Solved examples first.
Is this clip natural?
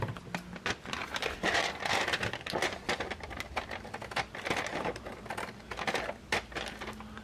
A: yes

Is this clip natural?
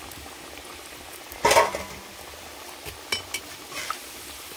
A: yes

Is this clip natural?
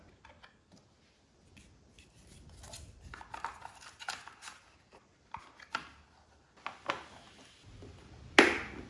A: yes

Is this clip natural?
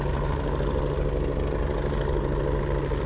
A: yes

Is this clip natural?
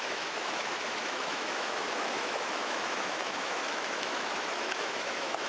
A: no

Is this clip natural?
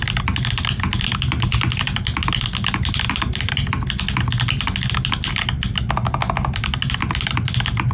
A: yes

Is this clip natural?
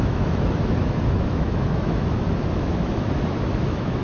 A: no